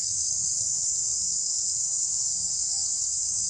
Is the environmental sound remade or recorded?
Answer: remade